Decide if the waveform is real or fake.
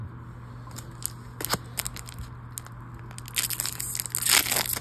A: real